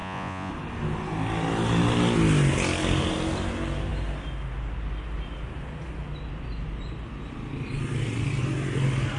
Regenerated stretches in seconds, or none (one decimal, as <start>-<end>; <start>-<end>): 0.0-0.5